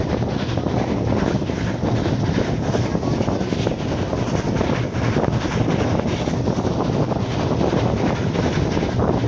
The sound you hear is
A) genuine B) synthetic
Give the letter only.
A